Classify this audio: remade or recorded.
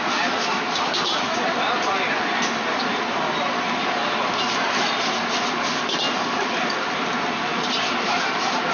remade